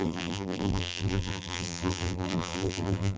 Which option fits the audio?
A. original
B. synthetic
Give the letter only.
B